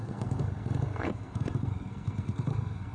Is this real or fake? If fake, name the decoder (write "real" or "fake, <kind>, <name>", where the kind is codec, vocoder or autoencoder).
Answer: fake, codec, SNAC